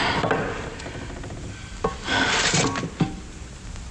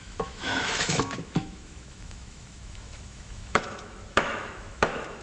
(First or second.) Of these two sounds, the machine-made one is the second